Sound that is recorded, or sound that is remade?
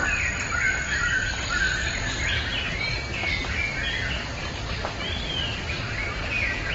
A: recorded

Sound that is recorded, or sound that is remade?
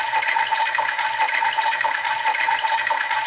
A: remade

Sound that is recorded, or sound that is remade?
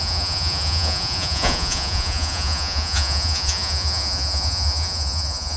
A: remade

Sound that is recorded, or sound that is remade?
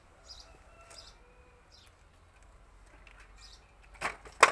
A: recorded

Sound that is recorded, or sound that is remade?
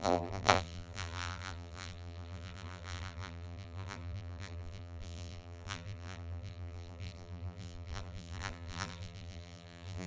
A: remade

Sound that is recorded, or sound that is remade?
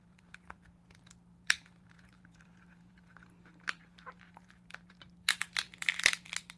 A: remade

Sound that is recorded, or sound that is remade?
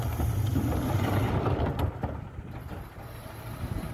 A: recorded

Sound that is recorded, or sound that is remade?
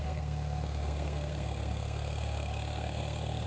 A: remade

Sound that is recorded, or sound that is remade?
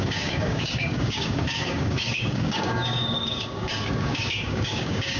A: remade